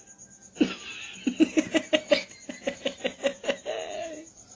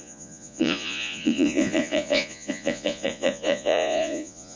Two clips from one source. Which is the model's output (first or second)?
second